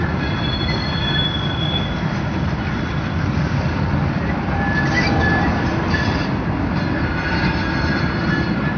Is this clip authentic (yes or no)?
yes